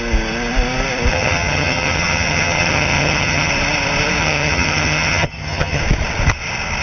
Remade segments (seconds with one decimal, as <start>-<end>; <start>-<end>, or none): 1.1-3.5; 4.2-5.8